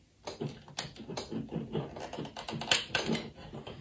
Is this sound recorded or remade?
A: recorded